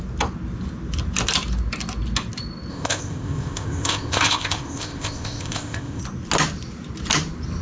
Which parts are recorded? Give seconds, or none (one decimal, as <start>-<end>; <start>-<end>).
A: 0.0-2.7; 6.0-7.6

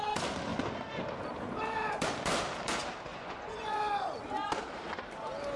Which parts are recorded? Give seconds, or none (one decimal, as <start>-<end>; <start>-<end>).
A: 0.0-3.1; 3.8-5.6

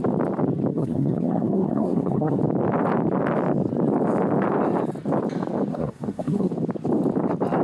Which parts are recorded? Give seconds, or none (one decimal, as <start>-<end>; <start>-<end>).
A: 0.0-0.7; 2.4-5.7; 6.5-7.6

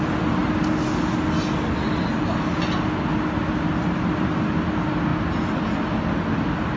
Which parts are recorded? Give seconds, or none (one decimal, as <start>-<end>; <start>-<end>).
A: 0.0-6.8

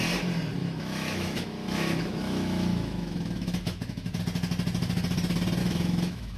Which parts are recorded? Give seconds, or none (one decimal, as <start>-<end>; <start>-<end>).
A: 0.0-0.6; 4.2-5.6

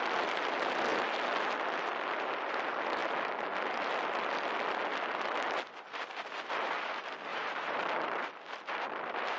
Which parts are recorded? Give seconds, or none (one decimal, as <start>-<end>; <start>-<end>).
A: 0.0-7.3; 7.8-9.4

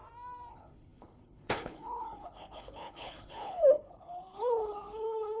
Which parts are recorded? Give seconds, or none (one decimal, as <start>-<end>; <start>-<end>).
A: 0.0-0.5